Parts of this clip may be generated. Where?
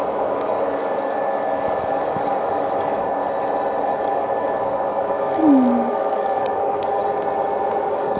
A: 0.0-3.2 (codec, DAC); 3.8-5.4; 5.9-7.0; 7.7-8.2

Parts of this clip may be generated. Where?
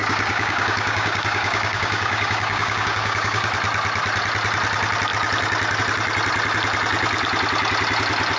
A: 0.0-3.5 (codec, DAC)